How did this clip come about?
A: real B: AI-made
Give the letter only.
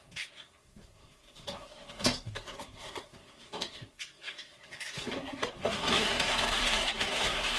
B